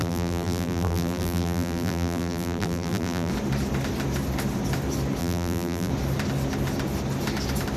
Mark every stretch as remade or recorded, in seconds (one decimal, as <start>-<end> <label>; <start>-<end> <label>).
0.0-3.3 remade; 3.3-5.2 recorded; 5.2-5.9 remade; 5.9-7.8 recorded